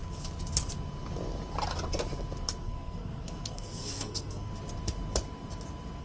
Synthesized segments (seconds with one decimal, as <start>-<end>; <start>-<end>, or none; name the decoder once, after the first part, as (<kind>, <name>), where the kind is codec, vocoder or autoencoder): 2.6-4.5 (codec, SNAC)